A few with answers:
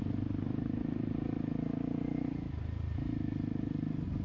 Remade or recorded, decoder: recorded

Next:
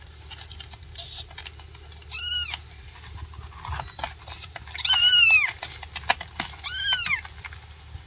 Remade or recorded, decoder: recorded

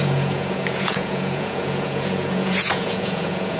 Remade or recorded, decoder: remade, vocoder, Vocos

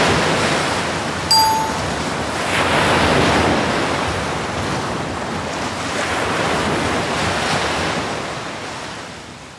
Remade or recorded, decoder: recorded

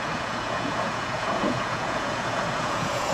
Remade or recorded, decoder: remade, vocoder, Vocos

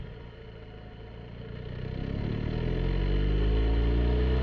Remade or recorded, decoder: recorded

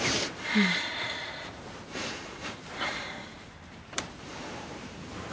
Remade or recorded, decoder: remade, vocoder, BigVGAN v2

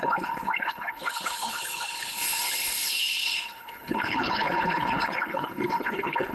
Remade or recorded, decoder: remade, codec, HILCodec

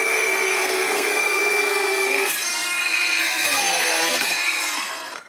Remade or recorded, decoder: remade, codec, SNAC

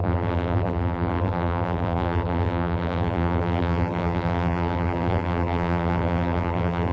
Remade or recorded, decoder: remade, vocoder, BigVGAN v2